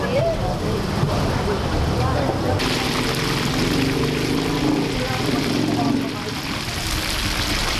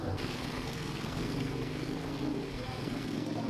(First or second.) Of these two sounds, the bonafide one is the first